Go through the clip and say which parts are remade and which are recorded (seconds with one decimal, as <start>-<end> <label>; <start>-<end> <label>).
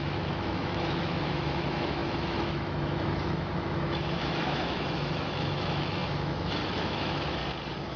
0.0-7.4 remade; 7.4-8.0 recorded